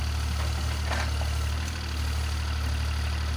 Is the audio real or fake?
real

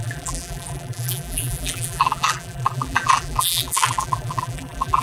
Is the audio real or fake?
fake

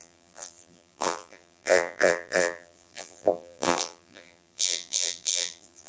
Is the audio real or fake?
fake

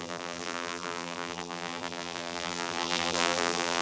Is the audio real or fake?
fake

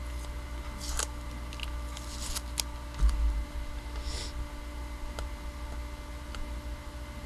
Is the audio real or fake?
real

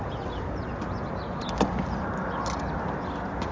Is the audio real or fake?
real